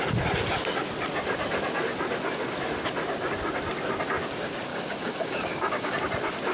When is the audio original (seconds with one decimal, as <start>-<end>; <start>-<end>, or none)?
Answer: 0.0-4.7; 6.0-6.5